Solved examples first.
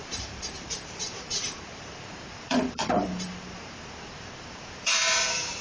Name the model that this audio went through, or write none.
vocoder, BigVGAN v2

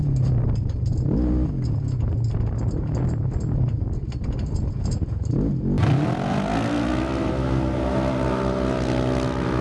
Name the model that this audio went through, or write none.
none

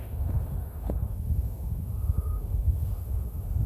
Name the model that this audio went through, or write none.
autoencoder, DAC-VAE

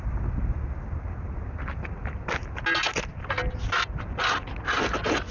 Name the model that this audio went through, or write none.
none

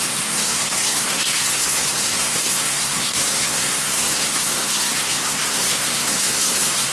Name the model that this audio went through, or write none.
codec, SNAC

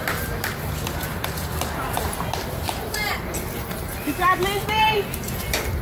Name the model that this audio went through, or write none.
vocoder, BigVGAN v2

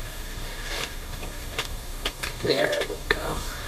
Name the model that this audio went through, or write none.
codec, DAC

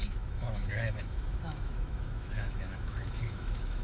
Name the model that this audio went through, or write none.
autoencoder, DAC-VAE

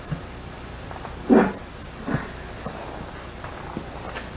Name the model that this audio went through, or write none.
none